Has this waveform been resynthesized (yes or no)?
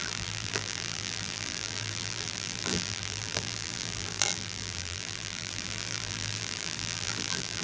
yes